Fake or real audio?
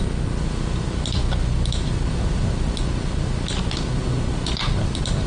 real